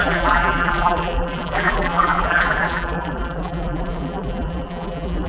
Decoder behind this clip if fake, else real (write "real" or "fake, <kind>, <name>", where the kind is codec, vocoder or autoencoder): fake, vocoder, BigVGAN v2